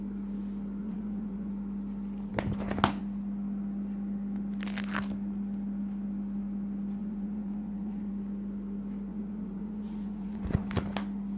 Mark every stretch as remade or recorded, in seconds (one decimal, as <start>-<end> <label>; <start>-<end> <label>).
0.0-0.8 recorded; 0.8-1.5 remade; 1.5-7.0 recorded; 7.0-8.1 remade; 8.1-9.1 recorded; 9.1-10.7 remade; 10.7-11.4 recorded